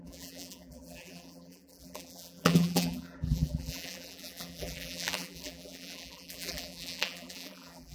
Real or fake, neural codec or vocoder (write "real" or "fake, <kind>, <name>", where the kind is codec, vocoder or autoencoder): fake, vocoder, BigVGAN v2